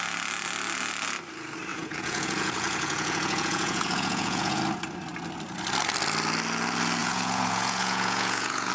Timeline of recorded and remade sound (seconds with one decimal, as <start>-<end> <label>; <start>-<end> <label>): 0.0-1.7 recorded; 1.7-4.6 remade; 4.6-7.0 recorded; 7.0-8.7 remade